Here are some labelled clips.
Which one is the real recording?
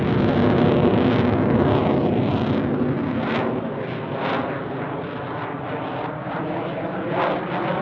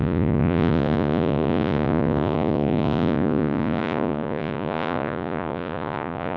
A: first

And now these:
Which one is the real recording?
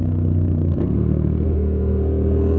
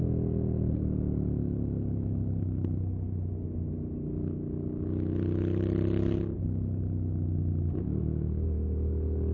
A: second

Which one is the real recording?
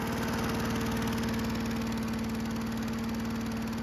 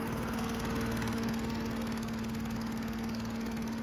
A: first